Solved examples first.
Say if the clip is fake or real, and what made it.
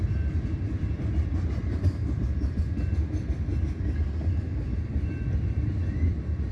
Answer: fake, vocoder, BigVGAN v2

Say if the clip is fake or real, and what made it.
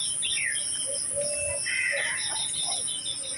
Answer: real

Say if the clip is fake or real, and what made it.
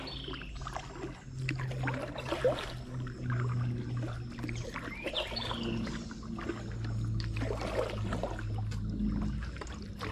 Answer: real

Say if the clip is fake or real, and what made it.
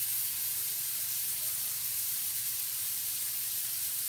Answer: fake, vocoder, BigVGAN v2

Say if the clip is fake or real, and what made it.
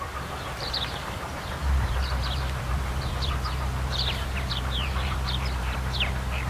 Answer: fake, vocoder, BigVGAN v2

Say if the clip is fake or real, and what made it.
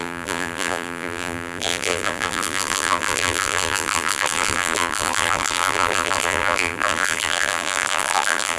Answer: fake, vocoder, BigVGAN v2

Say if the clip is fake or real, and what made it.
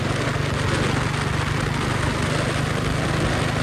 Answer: real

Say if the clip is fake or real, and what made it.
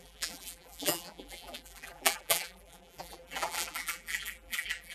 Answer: fake, vocoder, BigVGAN v2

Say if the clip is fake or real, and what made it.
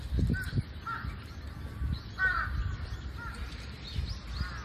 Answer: real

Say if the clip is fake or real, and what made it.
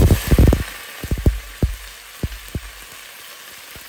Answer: real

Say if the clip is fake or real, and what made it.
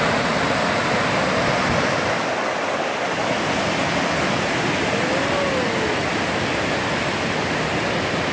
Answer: real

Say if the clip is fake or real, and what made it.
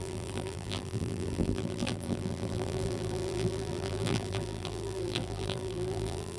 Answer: fake, vocoder, BigVGAN v2